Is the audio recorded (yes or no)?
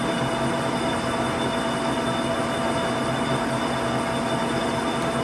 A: yes